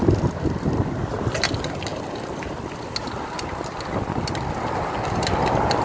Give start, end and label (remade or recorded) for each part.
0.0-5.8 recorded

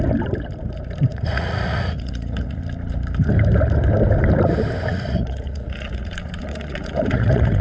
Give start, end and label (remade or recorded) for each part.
0.0-1.1 recorded; 1.1-2.6 remade; 2.6-4.9 recorded; 4.9-7.6 remade

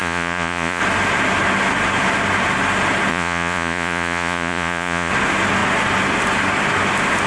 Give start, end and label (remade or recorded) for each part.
0.0-0.8 remade; 0.8-3.1 recorded; 3.1-5.1 remade; 5.1-7.3 recorded